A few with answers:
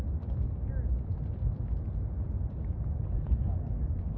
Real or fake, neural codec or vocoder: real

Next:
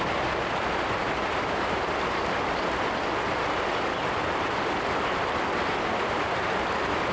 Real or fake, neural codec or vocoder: real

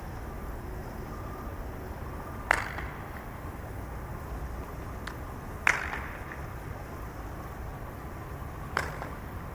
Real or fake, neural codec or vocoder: real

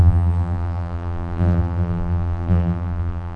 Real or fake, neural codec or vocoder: fake, vocoder, BigVGAN v2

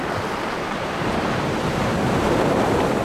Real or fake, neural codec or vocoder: fake, vocoder, BigVGAN v2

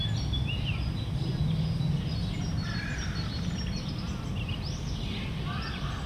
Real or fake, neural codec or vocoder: real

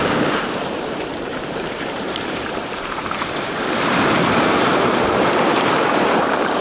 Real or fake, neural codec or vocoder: fake, vocoder, BigVGAN v2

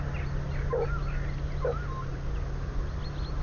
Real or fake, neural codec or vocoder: real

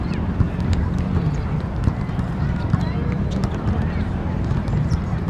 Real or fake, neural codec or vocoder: fake, vocoder, BigVGAN v2